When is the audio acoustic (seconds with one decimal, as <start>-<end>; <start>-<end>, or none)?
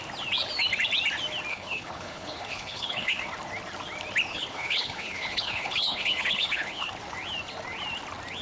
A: 0.0-1.5; 3.2-4.3; 6.9-8.4